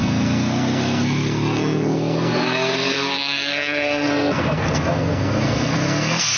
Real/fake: fake